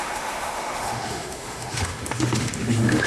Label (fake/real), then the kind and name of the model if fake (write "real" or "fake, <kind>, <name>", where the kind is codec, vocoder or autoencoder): fake, autoencoder, DAC-VAE